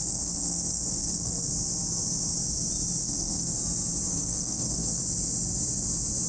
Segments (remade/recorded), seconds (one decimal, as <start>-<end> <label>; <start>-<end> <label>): 0.0-1.5 remade; 1.5-3.0 recorded; 3.0-3.5 remade; 3.5-4.1 recorded; 4.1-5.0 remade; 5.0-6.3 recorded